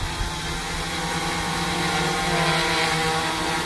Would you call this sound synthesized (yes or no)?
no